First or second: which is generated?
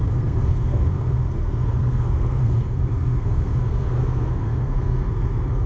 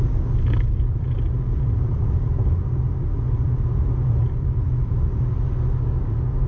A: first